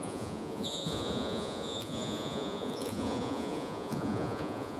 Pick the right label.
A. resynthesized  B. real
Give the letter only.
A